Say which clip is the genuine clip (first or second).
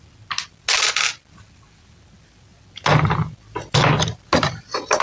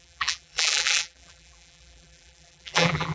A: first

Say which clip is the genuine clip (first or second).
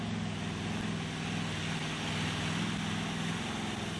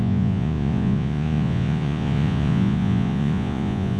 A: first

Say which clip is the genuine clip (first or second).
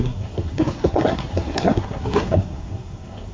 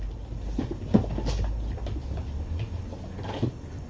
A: second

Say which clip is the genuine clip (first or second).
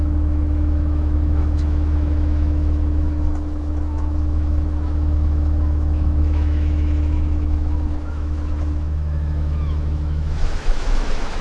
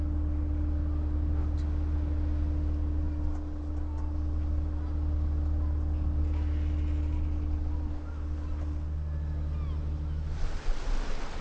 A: second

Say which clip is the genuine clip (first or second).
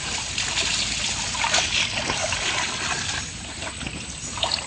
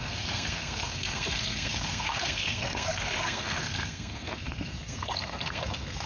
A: first